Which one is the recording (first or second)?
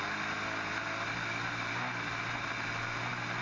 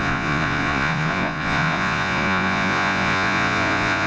first